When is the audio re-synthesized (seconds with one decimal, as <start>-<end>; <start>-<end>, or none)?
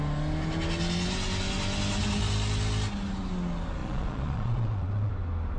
3.8-5.1